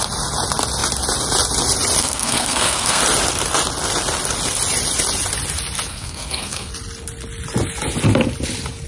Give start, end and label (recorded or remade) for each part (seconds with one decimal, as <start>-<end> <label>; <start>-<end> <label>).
0.0-2.0 recorded; 2.0-3.0 remade; 3.0-5.9 recorded; 5.9-6.7 remade; 6.7-8.9 recorded